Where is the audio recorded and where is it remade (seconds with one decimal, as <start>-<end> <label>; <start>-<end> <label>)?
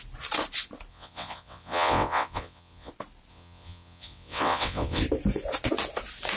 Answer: 0.0-0.9 recorded; 0.9-2.9 remade; 2.9-3.3 recorded; 3.3-5.0 remade; 5.0-6.4 recorded